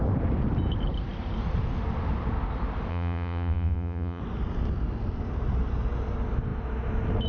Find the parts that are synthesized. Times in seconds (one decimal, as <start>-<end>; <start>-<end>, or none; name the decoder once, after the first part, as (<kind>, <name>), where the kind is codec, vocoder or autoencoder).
2.9-4.2 (vocoder, Vocos)